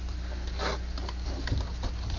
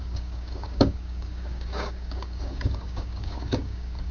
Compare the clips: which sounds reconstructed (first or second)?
second